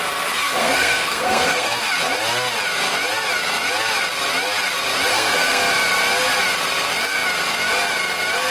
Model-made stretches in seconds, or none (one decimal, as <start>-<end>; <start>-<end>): 0.6-1.8; 5.1-5.6